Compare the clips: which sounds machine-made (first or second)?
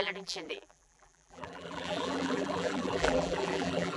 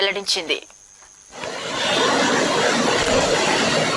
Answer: first